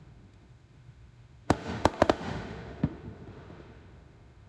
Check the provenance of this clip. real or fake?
fake